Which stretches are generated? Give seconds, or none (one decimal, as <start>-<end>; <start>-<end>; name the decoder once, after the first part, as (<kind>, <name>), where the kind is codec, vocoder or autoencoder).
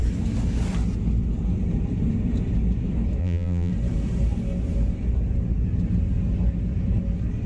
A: 3.2-3.7 (vocoder, BigVGAN v2)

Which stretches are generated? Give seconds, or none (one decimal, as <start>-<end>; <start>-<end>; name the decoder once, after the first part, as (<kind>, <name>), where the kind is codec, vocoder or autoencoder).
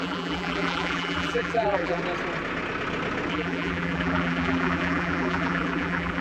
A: 0.0-2.0 (vocoder, BigVGAN v2); 3.3-6.2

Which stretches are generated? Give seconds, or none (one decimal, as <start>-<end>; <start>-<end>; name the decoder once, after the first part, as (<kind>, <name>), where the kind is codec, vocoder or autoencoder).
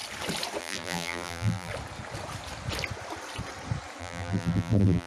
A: 0.6-1.7 (vocoder, BigVGAN v2); 4.0-5.1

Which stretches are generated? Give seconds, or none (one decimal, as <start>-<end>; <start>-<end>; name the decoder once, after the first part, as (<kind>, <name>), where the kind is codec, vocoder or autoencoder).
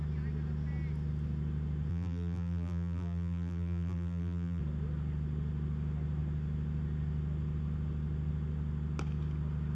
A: 1.9-4.6 (vocoder, BigVGAN v2)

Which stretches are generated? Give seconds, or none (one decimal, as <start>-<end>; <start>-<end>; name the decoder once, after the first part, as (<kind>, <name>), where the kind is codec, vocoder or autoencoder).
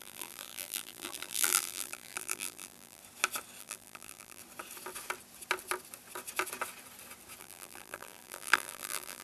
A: 0.0-3.0 (vocoder, BigVGAN v2); 3.6-4.4; 7.4-9.2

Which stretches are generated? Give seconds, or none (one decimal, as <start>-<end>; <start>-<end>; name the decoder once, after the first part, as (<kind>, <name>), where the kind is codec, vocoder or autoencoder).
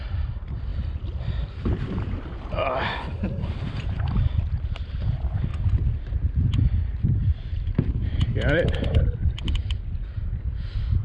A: 0.0-5.5 (vocoder, BigVGAN v2); 7.6-9.6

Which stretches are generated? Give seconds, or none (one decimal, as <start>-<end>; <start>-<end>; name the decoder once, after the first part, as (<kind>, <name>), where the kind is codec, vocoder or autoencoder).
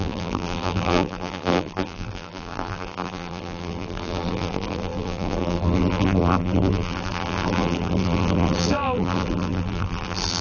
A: 0.0-10.4 (vocoder, BigVGAN v2)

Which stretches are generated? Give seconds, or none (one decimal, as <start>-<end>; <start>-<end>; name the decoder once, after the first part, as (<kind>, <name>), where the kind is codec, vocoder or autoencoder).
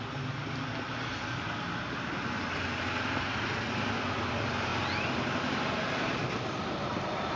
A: none